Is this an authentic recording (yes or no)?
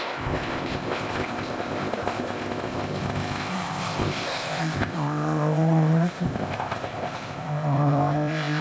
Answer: no